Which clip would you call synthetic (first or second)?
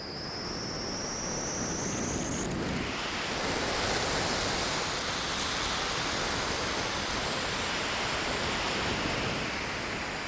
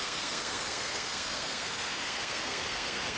second